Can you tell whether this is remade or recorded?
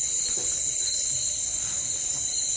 recorded